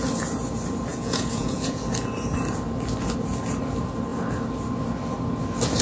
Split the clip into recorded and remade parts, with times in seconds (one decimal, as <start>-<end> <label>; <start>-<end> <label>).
0.0-0.9 recorded; 0.9-1.8 remade; 1.8-5.8 recorded